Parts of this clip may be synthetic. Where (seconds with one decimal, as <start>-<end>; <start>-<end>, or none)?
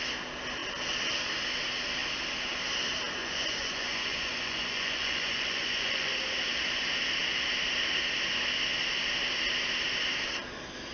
3.2-6.1